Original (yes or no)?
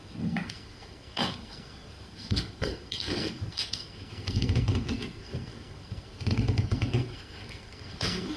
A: no